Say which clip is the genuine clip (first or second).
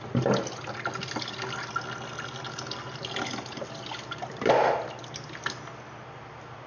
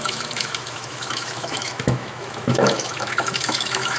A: first